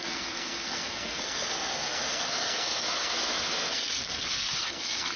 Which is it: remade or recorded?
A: remade